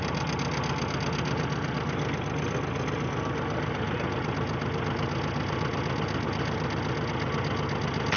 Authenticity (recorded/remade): recorded